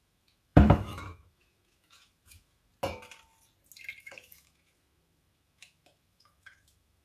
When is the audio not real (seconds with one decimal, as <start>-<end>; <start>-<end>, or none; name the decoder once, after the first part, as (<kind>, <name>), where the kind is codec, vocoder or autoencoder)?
0.0-2.7 (autoencoder, DAC-VAE); 4.0-7.0